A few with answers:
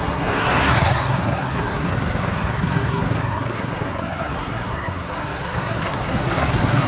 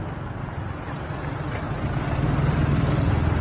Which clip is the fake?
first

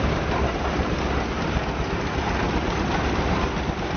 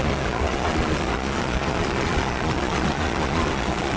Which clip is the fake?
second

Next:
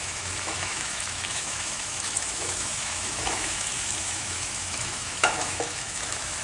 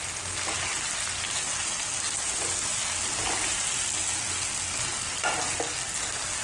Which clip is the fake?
first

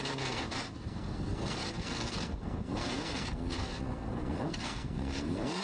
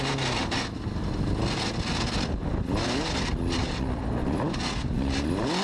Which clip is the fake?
first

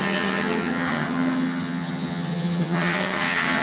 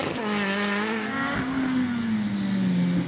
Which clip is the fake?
first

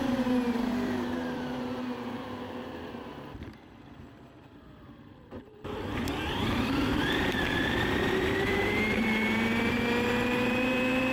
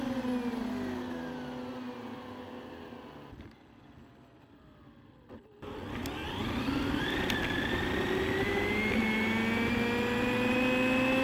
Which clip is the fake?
first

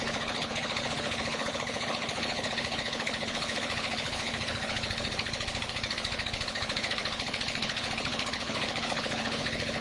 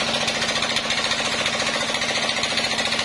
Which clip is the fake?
first